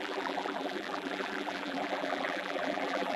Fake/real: fake